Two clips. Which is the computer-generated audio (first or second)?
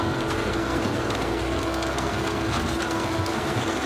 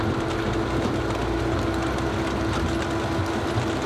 first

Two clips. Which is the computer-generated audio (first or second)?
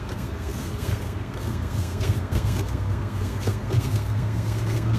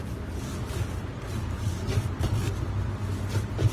first